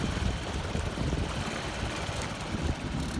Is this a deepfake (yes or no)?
no